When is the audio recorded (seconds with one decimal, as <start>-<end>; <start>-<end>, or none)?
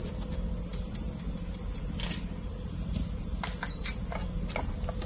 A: 0.0-5.1